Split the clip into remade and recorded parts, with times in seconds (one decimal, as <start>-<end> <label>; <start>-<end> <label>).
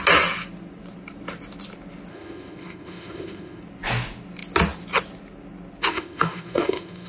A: 0.0-2.1 recorded; 2.1-3.6 remade; 3.6-5.9 recorded; 5.9-7.1 remade